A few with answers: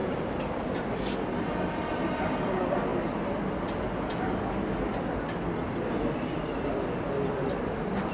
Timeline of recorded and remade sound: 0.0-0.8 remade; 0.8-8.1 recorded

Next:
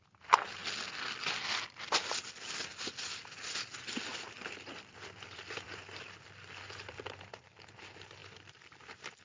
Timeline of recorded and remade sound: 0.0-4.1 recorded; 4.1-7.8 remade; 7.8-8.2 recorded; 8.2-9.2 remade

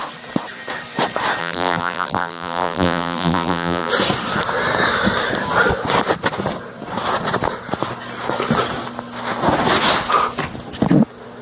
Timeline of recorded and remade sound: 0.0-1.4 recorded; 1.4-3.9 remade; 3.9-11.4 recorded

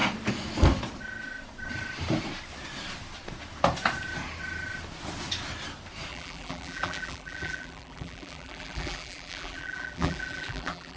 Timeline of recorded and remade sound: 0.0-6.1 recorded; 6.1-11.0 remade

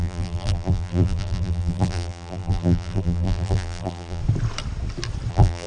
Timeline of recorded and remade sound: 0.0-4.2 remade; 4.2-5.3 recorded; 5.3-5.7 remade

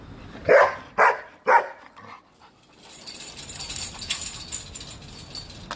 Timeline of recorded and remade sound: 0.0-0.4 recorded; 0.4-3.9 remade; 3.9-5.8 recorded

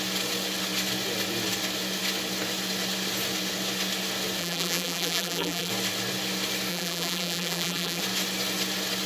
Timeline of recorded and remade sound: 0.0-4.4 recorded; 4.4-5.7 remade; 5.7-6.7 recorded; 6.7-8.0 remade; 8.0-9.1 recorded

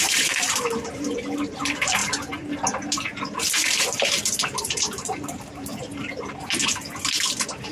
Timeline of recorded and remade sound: 0.0-7.7 remade